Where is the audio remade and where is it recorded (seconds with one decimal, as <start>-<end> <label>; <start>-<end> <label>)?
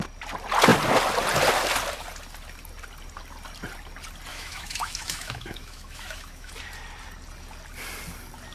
0.0-4.3 recorded; 4.3-6.5 remade; 6.5-8.5 recorded